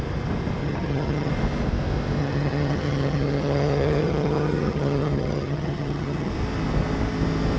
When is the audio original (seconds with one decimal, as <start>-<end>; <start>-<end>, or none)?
0.0-0.6; 1.3-2.2; 6.3-7.6